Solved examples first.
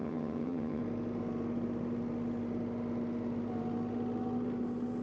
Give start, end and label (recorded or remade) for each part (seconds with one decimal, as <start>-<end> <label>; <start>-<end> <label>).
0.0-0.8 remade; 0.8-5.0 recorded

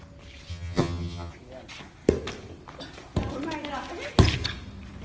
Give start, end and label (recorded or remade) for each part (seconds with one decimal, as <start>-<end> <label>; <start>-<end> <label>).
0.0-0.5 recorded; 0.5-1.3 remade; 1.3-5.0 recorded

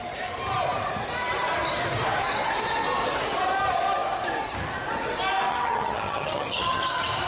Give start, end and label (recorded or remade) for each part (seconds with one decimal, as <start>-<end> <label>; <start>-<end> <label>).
0.0-5.5 recorded; 5.5-6.8 remade; 6.8-7.3 recorded